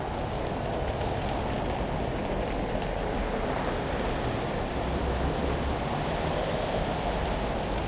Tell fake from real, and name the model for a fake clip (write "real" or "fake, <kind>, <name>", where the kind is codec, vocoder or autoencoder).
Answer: real